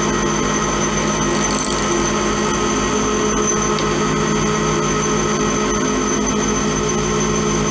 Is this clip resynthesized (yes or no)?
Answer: no